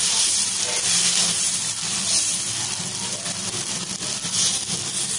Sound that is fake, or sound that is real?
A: real